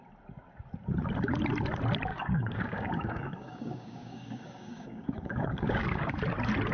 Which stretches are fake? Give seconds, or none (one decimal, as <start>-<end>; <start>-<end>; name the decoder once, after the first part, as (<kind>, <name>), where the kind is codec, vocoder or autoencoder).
2.1-6.1 (codec, DAC)